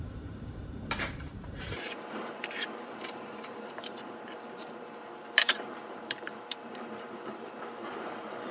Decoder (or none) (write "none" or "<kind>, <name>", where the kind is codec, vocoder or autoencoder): vocoder, BigVGAN v2